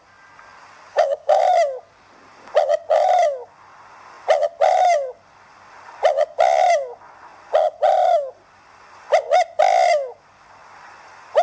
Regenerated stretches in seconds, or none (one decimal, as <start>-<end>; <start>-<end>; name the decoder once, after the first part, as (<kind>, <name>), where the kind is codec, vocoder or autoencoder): 0.9-1.4 (codec, DAC)